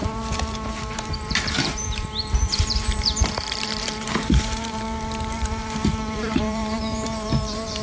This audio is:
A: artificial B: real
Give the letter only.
A